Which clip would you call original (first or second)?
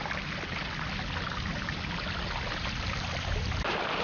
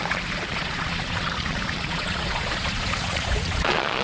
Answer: first